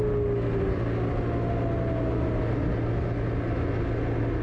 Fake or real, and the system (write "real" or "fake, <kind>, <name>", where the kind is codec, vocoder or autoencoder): real